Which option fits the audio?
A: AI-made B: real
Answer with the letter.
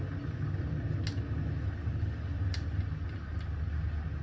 B